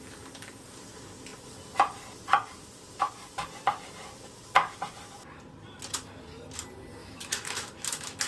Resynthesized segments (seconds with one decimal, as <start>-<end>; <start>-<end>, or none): 7.0-8.3